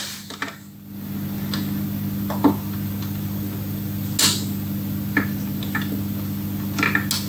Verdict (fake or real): real